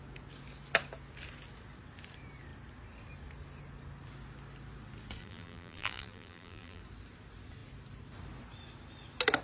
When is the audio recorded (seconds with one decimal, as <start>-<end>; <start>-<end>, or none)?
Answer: 0.0-5.2; 6.8-9.4